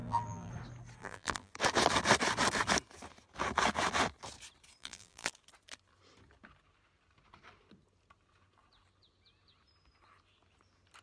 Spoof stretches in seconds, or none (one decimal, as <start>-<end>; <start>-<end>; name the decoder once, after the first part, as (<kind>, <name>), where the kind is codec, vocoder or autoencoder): 0.0-0.5 (vocoder, BigVGAN v2); 1.0-1.5; 4.8-5.3